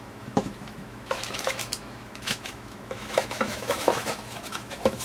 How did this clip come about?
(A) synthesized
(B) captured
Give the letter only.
A